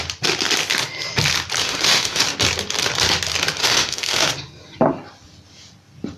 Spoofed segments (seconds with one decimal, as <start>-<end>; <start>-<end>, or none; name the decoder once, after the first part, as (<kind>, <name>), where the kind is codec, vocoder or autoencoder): 1.6-2.2 (autoencoder, DAC-VAE); 3.6-4.3